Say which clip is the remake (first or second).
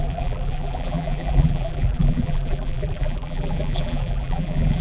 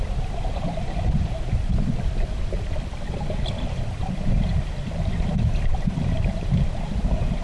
first